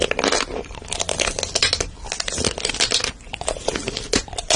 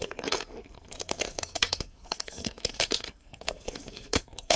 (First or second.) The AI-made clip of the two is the second